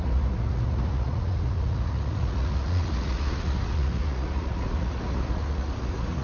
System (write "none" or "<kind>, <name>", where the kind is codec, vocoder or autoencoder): vocoder, Vocos